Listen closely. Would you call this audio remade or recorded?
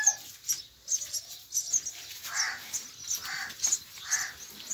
recorded